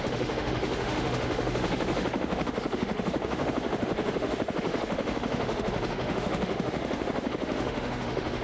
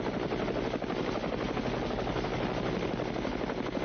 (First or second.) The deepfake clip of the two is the first